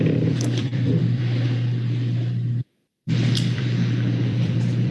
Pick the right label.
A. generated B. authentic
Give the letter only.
A